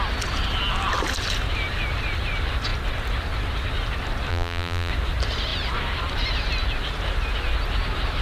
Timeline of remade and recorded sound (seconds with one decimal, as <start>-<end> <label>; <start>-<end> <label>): 0.0-4.3 recorded; 4.3-4.9 remade; 4.9-8.2 recorded